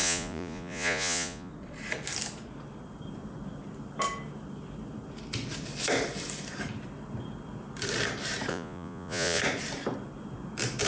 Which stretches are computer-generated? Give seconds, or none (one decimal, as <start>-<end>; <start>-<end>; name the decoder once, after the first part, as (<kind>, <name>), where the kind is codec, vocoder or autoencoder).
0.0-1.5 (vocoder, Vocos); 8.5-9.4